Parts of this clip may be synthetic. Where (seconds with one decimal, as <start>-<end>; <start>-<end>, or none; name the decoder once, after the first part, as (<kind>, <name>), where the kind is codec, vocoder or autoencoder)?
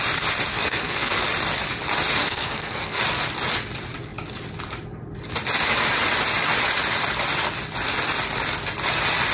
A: 0.5-1.1 (codec, SNAC); 2.2-3.0